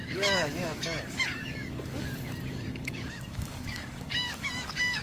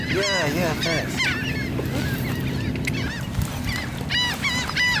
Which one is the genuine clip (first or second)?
second